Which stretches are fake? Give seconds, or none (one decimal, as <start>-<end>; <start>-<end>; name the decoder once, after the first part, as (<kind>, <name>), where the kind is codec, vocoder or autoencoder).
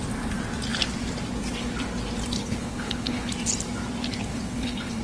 2.4-3.3 (codec, HILCodec); 4.3-5.0